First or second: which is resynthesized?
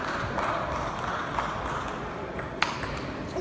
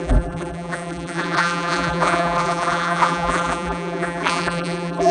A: second